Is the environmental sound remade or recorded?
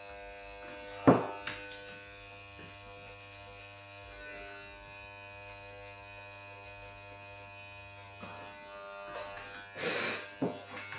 recorded